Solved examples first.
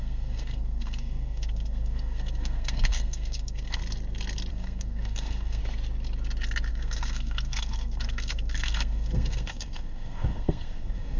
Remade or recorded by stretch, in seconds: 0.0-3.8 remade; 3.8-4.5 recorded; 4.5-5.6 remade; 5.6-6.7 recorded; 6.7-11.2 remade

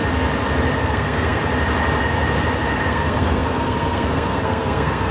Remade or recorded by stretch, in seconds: 0.0-0.8 recorded; 0.8-1.4 remade; 1.4-2.8 recorded; 2.8-5.1 remade

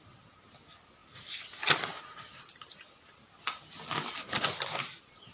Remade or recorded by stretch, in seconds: 0.0-5.3 recorded